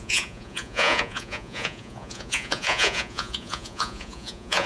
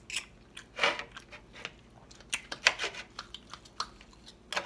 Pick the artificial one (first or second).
first